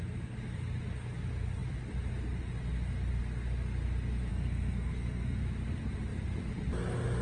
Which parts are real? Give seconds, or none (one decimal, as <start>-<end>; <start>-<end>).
0.0-4.3; 5.4-7.2